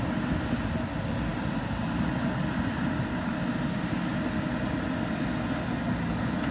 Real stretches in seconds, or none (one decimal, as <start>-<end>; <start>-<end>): 0.0-6.5